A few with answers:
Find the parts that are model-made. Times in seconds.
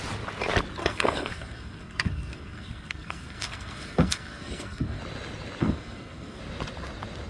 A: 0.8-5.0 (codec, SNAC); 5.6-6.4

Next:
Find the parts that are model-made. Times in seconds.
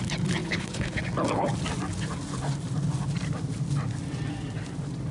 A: 0.4-1.0 (codec, HILCodec)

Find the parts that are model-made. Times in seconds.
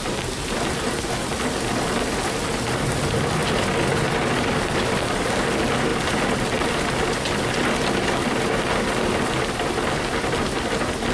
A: none